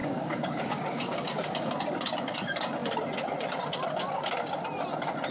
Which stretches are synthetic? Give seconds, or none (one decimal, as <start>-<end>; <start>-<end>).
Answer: 0.0-1.7

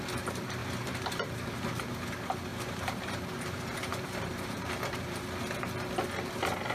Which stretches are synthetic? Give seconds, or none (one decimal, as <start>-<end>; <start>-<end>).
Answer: 0.6-1.7; 2.5-5.2

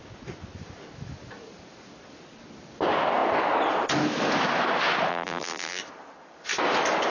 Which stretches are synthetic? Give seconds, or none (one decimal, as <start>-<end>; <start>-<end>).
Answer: 5.1-5.8

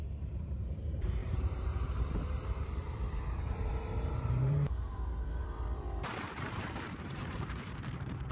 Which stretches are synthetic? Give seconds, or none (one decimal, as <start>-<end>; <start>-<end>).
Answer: 0.0-8.3

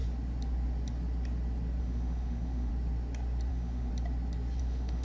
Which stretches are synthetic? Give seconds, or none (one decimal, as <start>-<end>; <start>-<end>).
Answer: 1.8-2.7; 3.5-3.9; 4.6-5.0

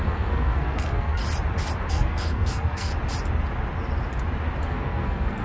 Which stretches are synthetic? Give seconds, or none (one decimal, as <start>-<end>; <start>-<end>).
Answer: 0.0-1.2; 1.9-2.9; 4.6-5.4